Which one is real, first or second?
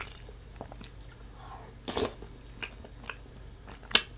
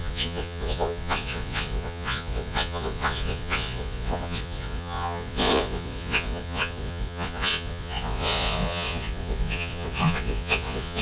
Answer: first